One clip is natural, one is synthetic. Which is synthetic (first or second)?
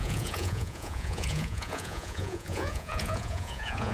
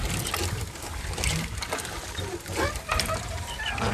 first